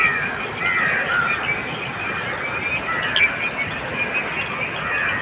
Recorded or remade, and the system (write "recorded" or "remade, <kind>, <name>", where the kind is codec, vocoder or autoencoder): recorded